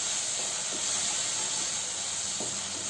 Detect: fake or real real